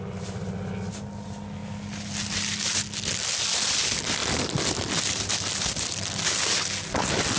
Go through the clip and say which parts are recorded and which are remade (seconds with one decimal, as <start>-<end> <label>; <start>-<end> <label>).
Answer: 0.0-4.2 recorded; 4.2-6.4 remade; 6.4-7.4 recorded